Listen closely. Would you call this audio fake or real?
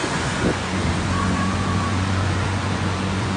fake